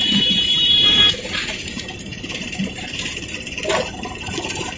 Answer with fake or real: fake